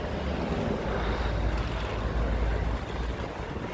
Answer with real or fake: real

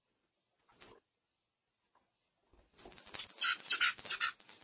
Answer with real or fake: real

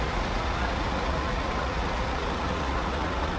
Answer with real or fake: fake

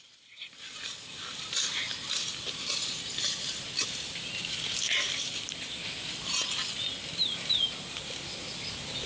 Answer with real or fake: real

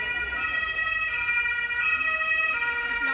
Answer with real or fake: fake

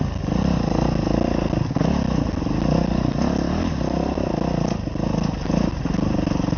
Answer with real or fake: real